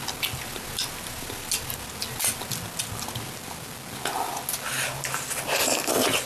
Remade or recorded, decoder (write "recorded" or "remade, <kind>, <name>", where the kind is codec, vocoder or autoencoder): recorded